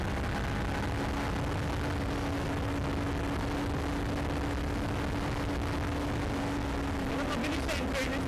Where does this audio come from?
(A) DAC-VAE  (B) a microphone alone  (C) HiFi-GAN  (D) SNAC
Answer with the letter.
B